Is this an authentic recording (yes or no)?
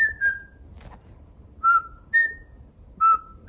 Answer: yes